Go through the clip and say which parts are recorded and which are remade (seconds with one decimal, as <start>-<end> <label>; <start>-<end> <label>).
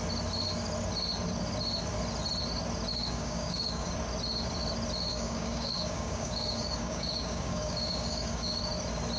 0.0-2.9 recorded; 2.9-3.9 remade; 3.9-5.1 recorded; 5.1-8.6 remade; 8.6-9.2 recorded